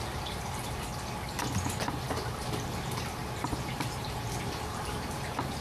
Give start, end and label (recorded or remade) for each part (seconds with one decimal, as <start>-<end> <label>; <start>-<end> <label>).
0.0-0.9 remade; 0.9-1.9 recorded; 1.9-5.6 remade